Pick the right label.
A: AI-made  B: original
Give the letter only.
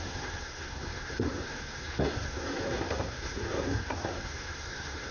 A